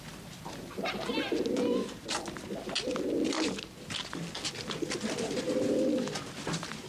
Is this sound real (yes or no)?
yes